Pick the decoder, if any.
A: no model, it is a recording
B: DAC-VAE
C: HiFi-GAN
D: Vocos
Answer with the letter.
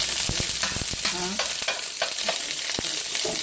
A